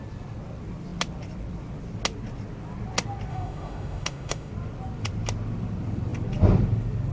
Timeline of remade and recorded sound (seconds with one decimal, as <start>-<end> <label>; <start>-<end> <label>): 0.0-3.3 recorded; 3.3-4.5 remade; 4.5-7.1 recorded